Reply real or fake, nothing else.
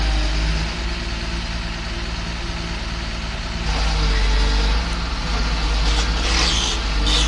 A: real